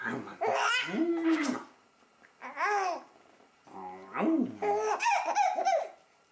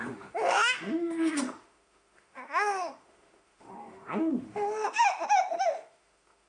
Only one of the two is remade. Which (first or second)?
second